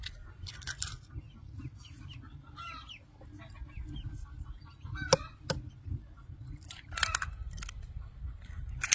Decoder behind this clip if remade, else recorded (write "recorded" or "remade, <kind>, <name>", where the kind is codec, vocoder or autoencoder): recorded